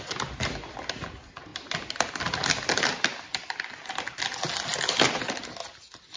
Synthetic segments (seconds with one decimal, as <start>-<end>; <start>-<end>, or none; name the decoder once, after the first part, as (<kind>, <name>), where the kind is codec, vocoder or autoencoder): none